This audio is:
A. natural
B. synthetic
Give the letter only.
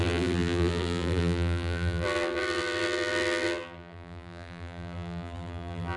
B